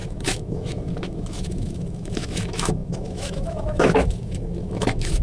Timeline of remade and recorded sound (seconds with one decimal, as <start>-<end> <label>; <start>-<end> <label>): 0.0-5.2 remade